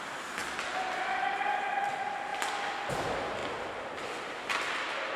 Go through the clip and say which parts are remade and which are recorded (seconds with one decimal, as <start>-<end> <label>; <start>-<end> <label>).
0.0-2.3 remade; 2.3-2.9 recorded; 2.9-3.4 remade; 3.4-4.0 recorded; 4.0-5.2 remade